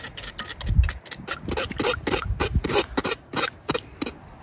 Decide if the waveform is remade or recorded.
recorded